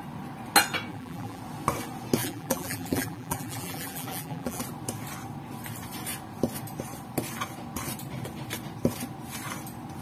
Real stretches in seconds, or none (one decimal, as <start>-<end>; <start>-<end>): 0.0-0.9; 1.4-2.2; 4.6-10.0

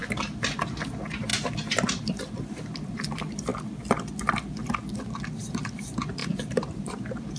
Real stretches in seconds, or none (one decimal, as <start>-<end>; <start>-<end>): 0.0-0.9; 1.3-2.1; 3.5-5.4

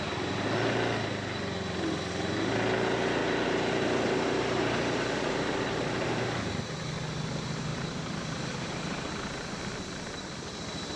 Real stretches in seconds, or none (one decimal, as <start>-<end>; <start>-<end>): 0.0-3.2; 6.6-7.7; 8.8-11.0

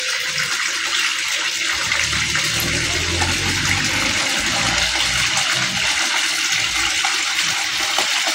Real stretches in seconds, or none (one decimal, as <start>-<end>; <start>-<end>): 0.0-8.3

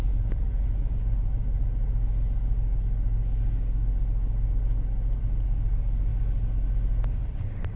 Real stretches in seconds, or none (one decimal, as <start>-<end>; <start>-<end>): 1.8-5.2; 6.1-7.1

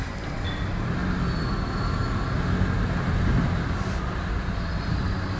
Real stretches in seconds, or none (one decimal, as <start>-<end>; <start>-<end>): 0.0-5.4

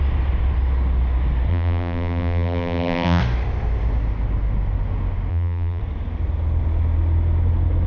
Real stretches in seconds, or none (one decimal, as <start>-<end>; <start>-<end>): 0.0-1.5; 3.2-5.3; 5.8-7.9

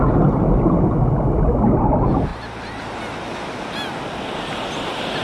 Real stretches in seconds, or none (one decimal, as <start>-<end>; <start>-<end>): 0.0-2.3; 2.8-5.2